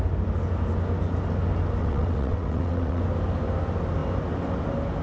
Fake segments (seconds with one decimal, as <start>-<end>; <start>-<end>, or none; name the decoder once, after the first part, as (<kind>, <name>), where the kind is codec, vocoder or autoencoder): 1.8-3.0 (vocoder, WaveNeXt)